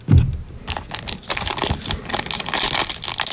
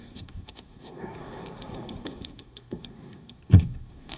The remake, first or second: second